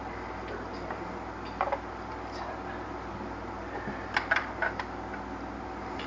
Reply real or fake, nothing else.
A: real